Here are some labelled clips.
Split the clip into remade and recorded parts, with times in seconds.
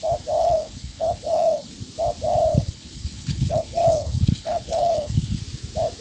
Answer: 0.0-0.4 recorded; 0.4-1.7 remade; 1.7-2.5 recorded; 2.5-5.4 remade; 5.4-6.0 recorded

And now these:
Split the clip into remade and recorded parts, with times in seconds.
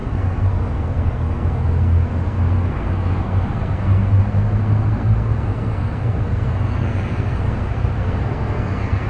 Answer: 0.0-9.1 remade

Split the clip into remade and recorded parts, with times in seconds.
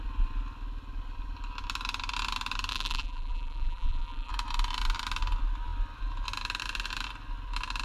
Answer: 0.0-2.7 recorded; 2.7-4.3 remade; 4.3-7.8 recorded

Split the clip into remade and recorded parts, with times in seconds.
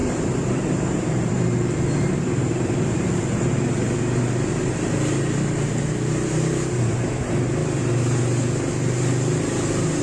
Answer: 0.0-3.5 remade; 3.5-7.6 recorded; 7.6-8.2 remade; 8.2-10.0 recorded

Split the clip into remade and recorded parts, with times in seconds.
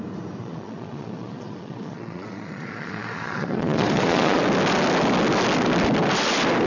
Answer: 0.0-0.4 recorded; 0.4-4.4 remade; 4.4-6.7 recorded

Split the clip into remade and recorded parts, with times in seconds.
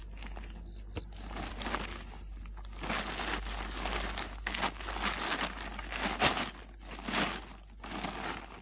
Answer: 0.0-8.6 recorded